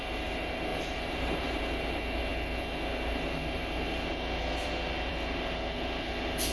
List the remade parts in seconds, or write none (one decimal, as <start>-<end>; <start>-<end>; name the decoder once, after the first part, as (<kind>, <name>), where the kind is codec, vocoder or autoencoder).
0.7-1.6 (vocoder, BigVGAN v2)